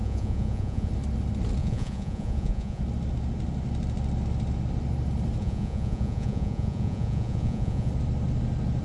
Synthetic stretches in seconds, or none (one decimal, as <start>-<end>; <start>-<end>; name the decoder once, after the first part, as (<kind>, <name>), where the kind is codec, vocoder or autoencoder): 0.0-0.9 (vocoder, Vocos); 1.6-2.8; 5.4-7.9